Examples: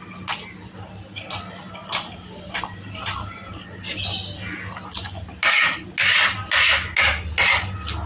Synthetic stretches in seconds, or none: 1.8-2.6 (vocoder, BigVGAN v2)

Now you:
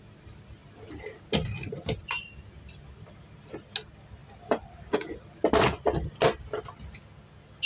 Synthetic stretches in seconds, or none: 4.2-5.5 (vocoder, BigVGAN v2)

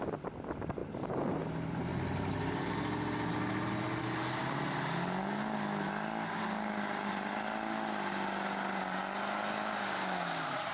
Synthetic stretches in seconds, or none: none

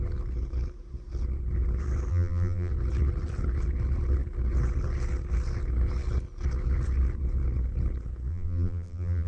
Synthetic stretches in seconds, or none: 2.1-2.7 (vocoder, BigVGAN v2); 8.3-9.3

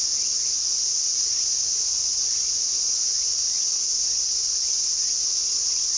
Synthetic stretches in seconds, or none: 0.0-0.8 (vocoder, BigVGAN v2); 3.1-3.7

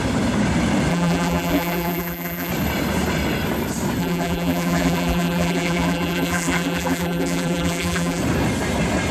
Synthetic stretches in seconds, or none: 0.9-2.5 (vocoder, BigVGAN v2); 4.0-8.2

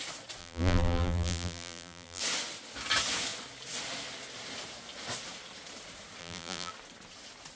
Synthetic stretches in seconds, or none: 0.4-2.2 (vocoder, BigVGAN v2); 6.2-6.7